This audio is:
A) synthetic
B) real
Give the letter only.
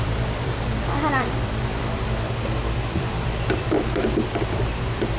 A